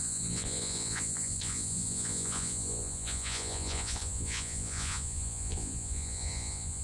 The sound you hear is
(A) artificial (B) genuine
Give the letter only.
A